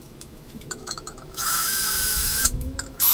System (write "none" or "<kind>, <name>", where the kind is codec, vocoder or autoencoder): autoencoder, DAC-VAE